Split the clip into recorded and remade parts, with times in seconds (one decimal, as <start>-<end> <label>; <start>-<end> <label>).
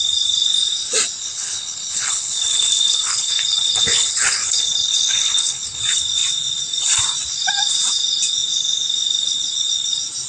0.0-1.2 recorded; 1.2-5.8 remade; 5.8-10.3 recorded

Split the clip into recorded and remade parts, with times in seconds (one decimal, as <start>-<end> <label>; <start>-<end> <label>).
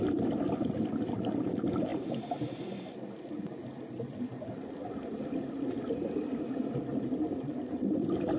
0.0-8.4 recorded